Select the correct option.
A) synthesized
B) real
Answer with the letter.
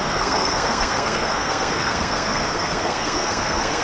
A